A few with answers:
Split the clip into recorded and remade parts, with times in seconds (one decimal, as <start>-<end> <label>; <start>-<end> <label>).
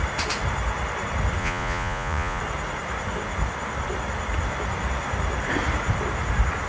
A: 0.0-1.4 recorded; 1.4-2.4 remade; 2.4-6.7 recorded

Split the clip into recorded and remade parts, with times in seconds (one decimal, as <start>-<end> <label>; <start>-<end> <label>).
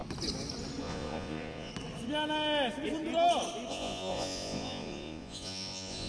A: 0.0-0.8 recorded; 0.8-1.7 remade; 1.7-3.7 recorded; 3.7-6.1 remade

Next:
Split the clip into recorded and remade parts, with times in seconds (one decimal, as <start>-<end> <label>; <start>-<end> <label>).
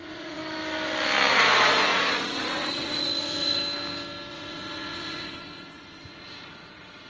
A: 0.0-0.4 remade; 0.4-1.3 recorded; 1.3-3.6 remade; 3.6-4.3 recorded; 4.3-7.1 remade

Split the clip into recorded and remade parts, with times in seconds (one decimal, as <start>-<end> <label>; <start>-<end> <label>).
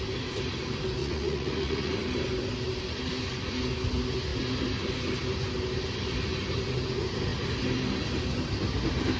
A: 0.0-1.0 recorded; 1.0-1.9 remade; 1.9-9.2 recorded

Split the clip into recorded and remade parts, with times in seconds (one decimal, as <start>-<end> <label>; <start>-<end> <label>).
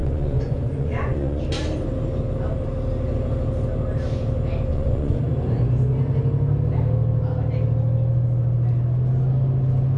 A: 0.0-1.4 remade; 1.4-4.7 recorded; 4.7-5.2 remade; 5.2-10.0 recorded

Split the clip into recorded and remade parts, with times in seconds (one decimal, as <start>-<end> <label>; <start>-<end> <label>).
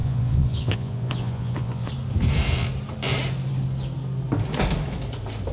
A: 0.0-1.9 remade; 1.9-5.5 recorded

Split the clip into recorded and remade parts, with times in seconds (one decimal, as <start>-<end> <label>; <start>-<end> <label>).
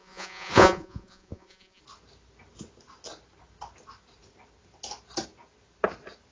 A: 0.0-1.8 remade; 1.8-6.3 recorded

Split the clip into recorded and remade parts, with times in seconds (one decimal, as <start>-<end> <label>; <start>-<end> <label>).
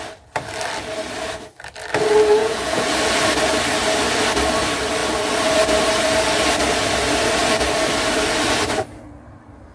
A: 0.0-2.4 recorded; 2.4-2.9 remade; 2.9-9.7 recorded